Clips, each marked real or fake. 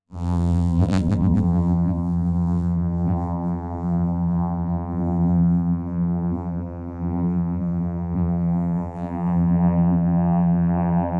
fake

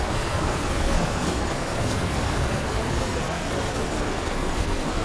fake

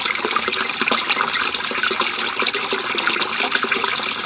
real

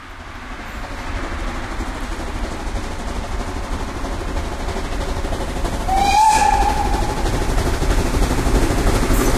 real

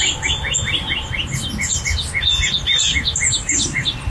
real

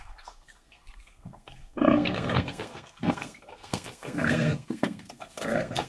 fake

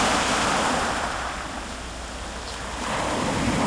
real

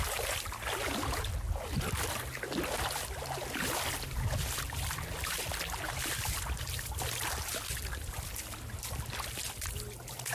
real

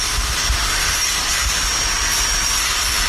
fake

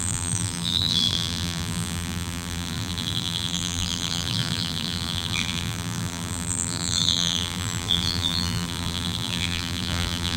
fake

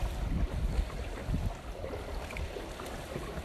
real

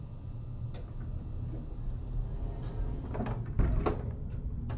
real